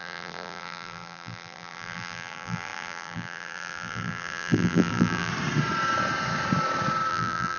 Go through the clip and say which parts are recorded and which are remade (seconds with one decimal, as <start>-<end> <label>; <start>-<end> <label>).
0.0-5.3 remade; 5.3-7.1 recorded; 7.1-7.6 remade